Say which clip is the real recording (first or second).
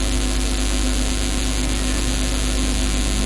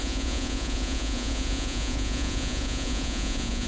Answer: first